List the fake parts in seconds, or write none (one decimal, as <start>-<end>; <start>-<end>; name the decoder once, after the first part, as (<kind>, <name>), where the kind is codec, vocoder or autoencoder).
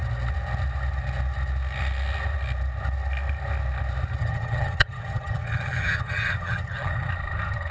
4.2-7.1 (vocoder, HiFi-GAN)